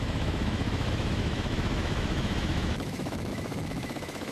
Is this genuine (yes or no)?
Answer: no